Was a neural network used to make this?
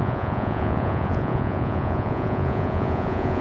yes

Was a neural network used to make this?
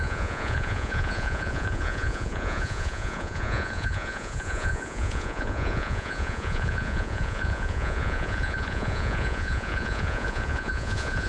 yes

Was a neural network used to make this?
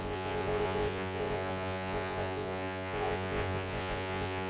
yes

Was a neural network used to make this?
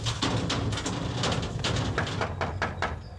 no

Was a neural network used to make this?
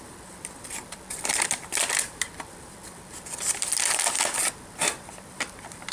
yes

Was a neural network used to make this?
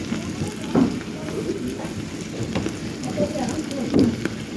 yes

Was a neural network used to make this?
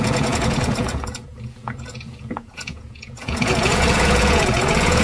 yes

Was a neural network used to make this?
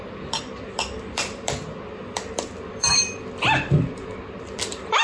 yes